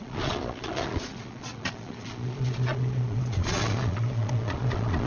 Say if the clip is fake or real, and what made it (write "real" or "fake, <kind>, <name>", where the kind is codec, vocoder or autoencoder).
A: fake, vocoder, Vocos